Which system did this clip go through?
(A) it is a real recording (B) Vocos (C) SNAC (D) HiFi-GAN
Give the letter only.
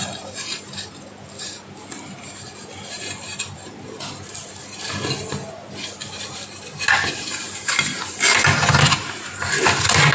A